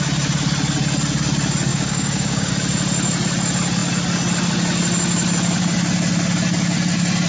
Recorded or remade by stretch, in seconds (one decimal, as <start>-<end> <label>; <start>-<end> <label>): 0.0-1.7 recorded; 1.7-2.5 remade; 2.5-7.3 recorded